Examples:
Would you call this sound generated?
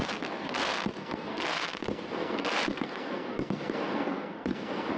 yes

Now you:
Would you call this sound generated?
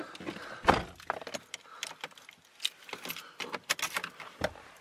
no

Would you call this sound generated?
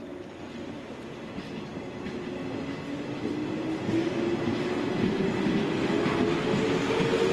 no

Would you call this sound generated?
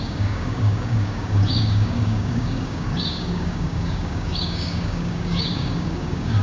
yes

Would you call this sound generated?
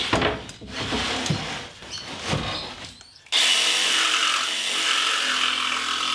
no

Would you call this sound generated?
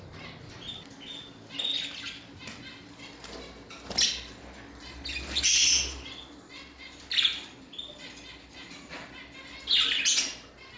no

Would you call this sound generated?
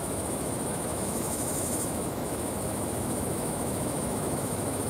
yes